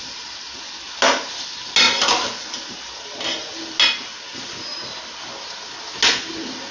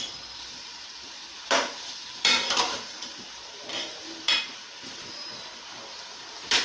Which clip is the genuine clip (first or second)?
first